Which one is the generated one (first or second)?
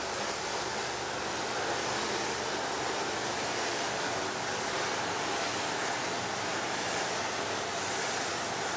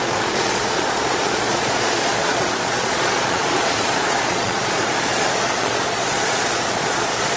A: second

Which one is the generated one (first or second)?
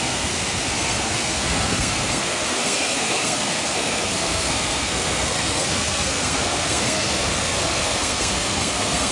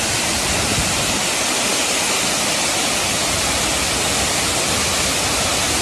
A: first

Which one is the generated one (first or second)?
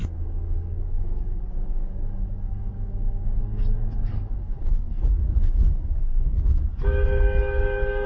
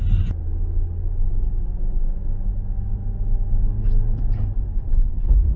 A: first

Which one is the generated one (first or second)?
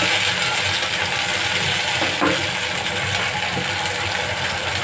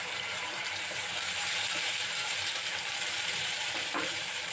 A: second